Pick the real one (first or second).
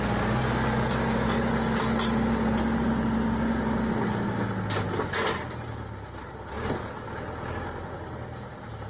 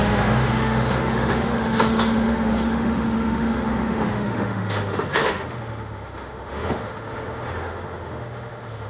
first